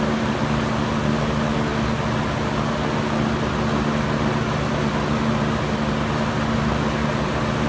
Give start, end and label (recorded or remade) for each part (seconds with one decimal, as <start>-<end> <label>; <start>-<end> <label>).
0.0-7.7 recorded